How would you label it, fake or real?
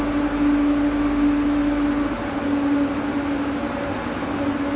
real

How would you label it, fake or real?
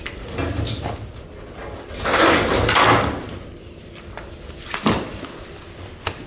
real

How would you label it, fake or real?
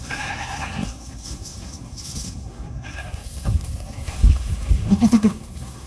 fake